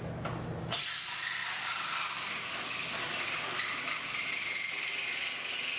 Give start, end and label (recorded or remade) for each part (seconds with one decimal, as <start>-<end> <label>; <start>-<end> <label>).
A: 0.0-5.8 recorded